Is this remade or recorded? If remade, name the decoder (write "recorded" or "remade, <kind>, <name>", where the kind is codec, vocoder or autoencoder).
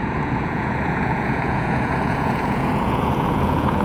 remade, vocoder, Vocos